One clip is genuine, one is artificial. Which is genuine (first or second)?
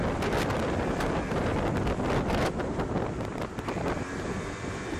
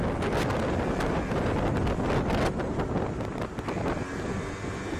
second